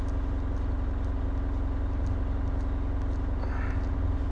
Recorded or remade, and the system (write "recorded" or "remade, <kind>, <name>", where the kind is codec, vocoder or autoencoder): recorded